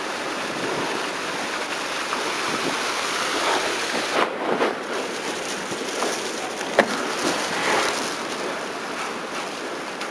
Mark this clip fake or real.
real